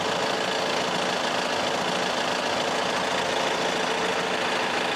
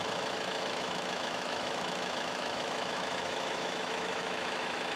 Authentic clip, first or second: first